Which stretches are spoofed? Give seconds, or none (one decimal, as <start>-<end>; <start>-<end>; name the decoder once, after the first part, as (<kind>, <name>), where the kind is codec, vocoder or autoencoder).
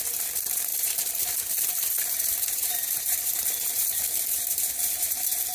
0.0-5.5 (vocoder, BigVGAN v2)